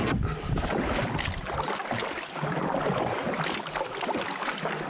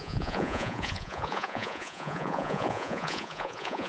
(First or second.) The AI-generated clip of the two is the second